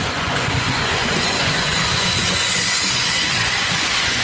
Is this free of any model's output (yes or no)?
no